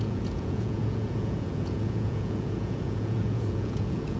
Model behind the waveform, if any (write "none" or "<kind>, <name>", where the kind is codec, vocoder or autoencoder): vocoder, Vocos